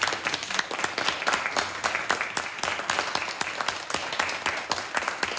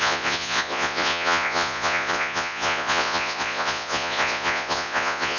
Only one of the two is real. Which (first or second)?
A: first